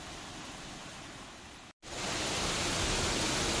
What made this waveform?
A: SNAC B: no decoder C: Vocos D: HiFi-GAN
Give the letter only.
B